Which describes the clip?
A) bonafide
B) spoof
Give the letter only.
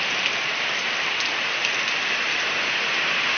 A